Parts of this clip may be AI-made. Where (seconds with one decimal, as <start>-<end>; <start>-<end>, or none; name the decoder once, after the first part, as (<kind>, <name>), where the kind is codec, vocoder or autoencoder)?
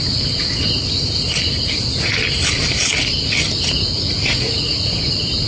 4.2-5.0 (vocoder, Vocos)